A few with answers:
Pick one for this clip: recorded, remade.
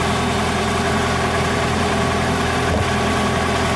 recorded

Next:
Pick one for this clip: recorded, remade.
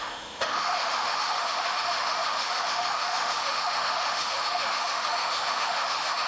remade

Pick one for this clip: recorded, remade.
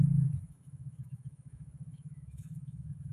remade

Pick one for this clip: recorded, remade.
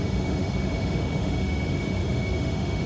remade